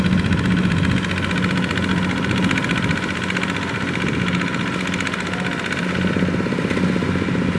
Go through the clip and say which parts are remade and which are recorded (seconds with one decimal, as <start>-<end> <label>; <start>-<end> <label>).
0.0-7.6 recorded